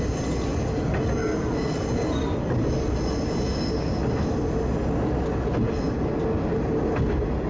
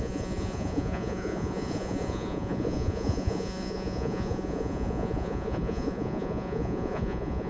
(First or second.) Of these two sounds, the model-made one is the second